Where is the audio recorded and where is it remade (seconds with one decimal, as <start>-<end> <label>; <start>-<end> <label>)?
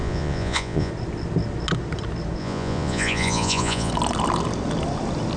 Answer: 0.0-0.9 remade; 0.9-2.4 recorded; 2.4-3.9 remade; 3.9-5.4 recorded